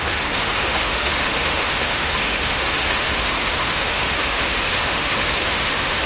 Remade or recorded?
remade